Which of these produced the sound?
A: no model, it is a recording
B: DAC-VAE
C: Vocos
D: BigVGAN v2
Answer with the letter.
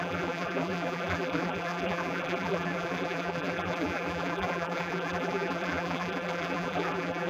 D